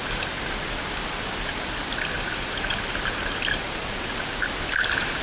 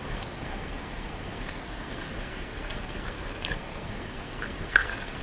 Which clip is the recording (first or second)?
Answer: first